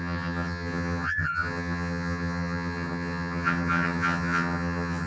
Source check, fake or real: fake